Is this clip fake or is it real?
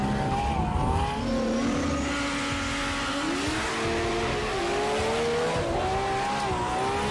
real